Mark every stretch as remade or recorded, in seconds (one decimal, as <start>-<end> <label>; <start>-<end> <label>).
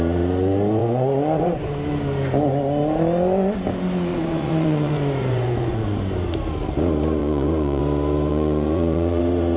0.0-0.8 recorded; 0.8-1.7 remade; 1.7-4.1 recorded; 4.1-6.0 remade; 6.0-7.2 recorded; 7.2-7.8 remade; 7.8-8.3 recorded; 8.3-9.2 remade; 9.2-9.6 recorded